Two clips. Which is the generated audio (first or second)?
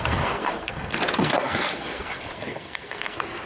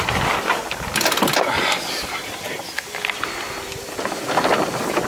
first